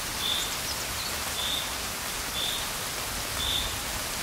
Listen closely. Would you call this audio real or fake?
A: real